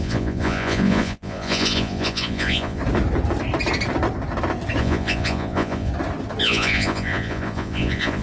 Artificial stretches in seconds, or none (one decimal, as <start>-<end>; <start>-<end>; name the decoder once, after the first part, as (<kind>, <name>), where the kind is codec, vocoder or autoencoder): 0.0-2.8 (vocoder, Vocos); 4.8-5.9; 6.4-8.2

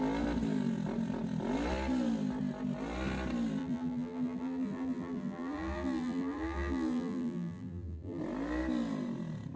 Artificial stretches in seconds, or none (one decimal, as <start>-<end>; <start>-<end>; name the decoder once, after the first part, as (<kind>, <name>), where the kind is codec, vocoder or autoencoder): 3.6-8.2 (vocoder, BigVGAN v2)

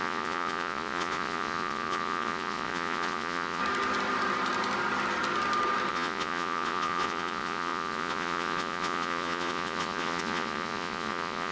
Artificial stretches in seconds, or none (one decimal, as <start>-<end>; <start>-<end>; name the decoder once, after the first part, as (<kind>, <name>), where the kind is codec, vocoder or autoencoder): 0.0-3.6 (vocoder, Vocos); 5.9-11.5

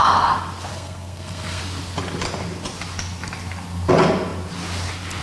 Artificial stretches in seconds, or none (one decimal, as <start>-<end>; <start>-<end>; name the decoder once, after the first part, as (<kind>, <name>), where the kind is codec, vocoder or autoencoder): 0.7-1.6 (codec, SNAC)